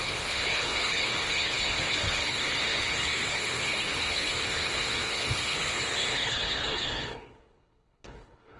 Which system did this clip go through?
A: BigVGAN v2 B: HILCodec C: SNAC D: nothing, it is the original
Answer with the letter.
B